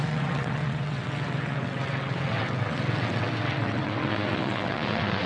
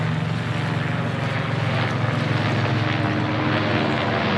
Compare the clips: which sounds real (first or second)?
second